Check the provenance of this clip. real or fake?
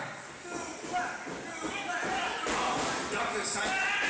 real